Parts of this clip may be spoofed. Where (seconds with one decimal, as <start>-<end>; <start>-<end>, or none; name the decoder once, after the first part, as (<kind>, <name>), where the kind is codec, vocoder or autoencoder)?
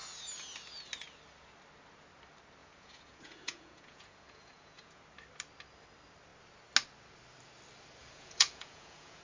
2.6-5.0 (vocoder, Vocos); 8.0-9.2